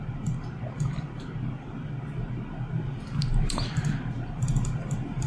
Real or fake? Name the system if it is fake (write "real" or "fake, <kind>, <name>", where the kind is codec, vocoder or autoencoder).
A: real